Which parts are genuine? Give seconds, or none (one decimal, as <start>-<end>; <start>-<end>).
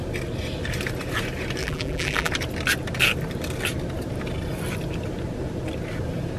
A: 0.0-1.6; 2.3-6.4